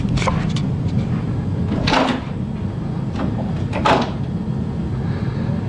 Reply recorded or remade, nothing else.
recorded